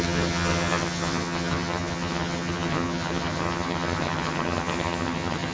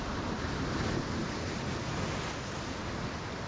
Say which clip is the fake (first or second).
first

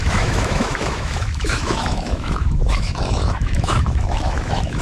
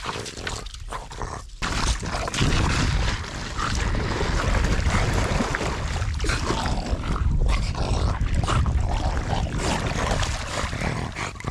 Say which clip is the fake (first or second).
first